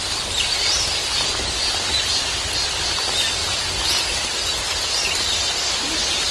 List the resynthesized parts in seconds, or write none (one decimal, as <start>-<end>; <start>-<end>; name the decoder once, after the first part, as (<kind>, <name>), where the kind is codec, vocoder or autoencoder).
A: 3.4-4.0 (vocoder, Vocos)

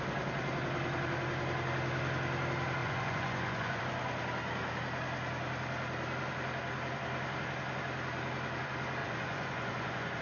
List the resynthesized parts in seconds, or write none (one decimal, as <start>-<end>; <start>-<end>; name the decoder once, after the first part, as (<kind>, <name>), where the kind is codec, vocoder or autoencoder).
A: 2.8-3.8 (vocoder, Vocos); 9.0-10.2

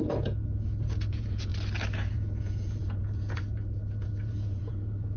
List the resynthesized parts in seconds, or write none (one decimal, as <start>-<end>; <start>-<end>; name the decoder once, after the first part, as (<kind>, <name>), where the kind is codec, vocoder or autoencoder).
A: 0.0-1.5 (vocoder, Vocos); 2.1-5.2

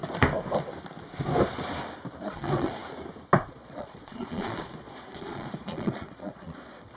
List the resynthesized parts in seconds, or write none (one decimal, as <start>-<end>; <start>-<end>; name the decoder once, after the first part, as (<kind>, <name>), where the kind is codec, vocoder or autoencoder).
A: 2.3-2.8 (vocoder, Vocos); 3.5-7.0

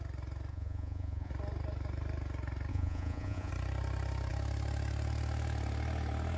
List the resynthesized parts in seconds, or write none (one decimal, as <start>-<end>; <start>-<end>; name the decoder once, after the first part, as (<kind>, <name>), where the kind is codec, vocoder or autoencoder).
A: 0.5-1.3 (vocoder, Vocos); 2.7-3.5

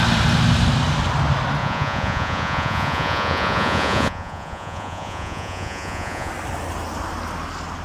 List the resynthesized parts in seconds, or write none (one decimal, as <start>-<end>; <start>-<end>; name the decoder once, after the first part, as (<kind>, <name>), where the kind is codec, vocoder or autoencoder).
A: 1.6-6.3 (vocoder, Vocos)

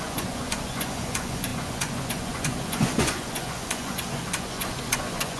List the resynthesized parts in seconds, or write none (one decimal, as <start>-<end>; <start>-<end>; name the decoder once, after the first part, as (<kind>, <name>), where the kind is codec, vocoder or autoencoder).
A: 0.0-5.4 (vocoder, Vocos)

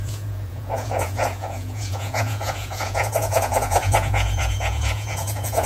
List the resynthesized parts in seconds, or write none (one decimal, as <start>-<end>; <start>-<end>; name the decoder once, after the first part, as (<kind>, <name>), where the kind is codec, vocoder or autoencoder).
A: 0.0-5.7 (vocoder, Vocos)